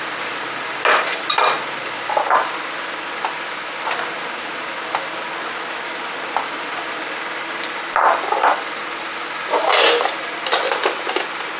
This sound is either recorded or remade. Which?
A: recorded